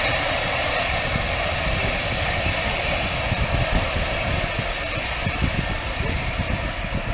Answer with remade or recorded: recorded